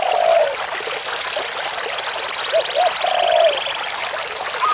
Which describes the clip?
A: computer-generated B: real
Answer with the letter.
B